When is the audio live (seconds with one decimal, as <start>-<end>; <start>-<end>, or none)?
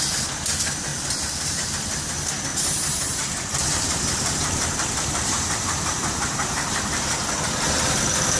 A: 0.0-0.9; 1.7-2.5; 7.4-8.4